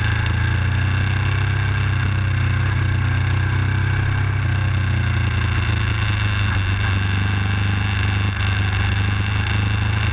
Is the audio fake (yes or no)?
no